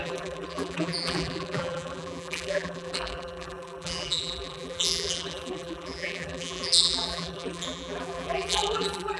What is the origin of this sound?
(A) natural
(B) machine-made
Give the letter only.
B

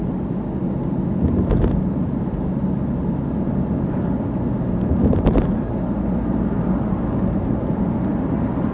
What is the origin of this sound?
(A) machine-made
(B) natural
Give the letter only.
B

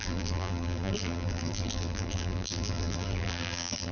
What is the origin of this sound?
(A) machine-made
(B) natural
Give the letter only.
A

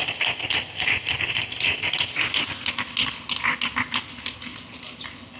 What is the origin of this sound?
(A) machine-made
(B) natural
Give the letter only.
B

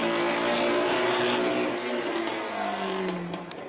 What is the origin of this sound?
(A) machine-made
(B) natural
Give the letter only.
B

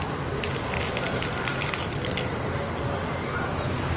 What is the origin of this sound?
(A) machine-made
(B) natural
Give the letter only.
B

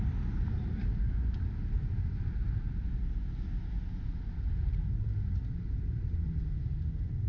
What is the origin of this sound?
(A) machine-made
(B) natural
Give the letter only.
B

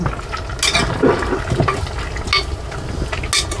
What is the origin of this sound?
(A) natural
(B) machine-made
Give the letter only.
A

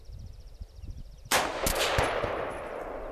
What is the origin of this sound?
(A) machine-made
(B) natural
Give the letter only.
B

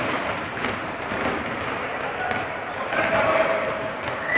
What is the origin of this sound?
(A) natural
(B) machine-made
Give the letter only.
B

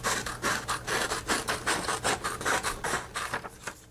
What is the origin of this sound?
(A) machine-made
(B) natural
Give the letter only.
B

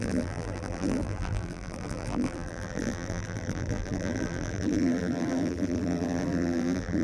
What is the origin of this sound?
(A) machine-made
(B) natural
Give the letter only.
A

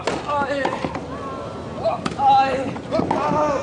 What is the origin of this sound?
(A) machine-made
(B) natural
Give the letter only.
B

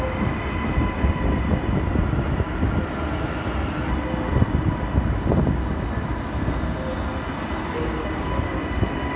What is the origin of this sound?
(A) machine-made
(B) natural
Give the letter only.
B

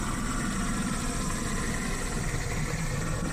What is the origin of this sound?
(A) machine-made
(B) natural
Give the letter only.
A